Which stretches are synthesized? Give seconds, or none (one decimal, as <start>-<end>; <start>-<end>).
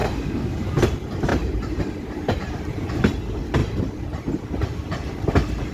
0.0-0.9; 1.3-2.9; 3.6-5.2